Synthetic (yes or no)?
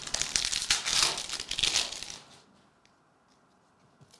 no